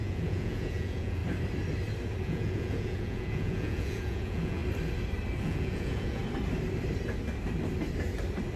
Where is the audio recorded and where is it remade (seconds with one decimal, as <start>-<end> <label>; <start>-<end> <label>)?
0.0-1.2 remade; 1.2-2.2 recorded; 2.2-4.6 remade; 4.6-5.4 recorded; 5.4-6.2 remade; 6.2-8.6 recorded